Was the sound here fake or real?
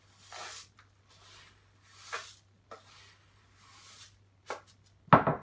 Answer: real